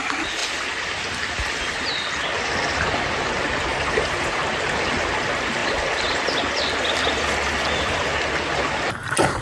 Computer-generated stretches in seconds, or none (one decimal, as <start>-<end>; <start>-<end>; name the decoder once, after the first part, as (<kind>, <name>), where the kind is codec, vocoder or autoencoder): 3.7-4.4 (vocoder, BigVGAN v2)